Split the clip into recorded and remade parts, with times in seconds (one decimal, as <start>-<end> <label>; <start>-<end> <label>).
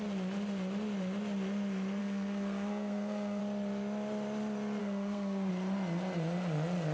0.0-2.0 recorded; 2.0-3.4 remade; 3.4-4.8 recorded; 4.8-5.5 remade; 5.5-6.9 recorded